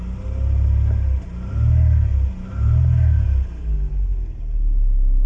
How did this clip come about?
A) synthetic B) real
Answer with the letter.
B